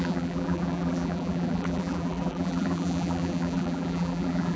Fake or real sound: fake